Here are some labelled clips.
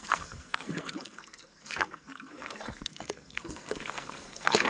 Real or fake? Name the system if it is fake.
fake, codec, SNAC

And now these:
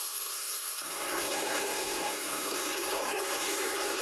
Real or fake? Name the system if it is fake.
fake, codec, SNAC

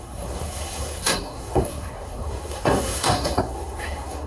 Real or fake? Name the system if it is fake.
fake, codec, SNAC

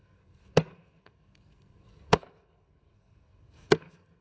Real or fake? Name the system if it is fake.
fake, codec, SNAC